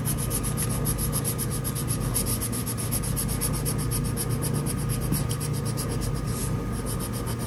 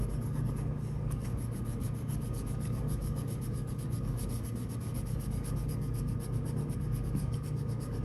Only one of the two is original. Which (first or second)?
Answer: first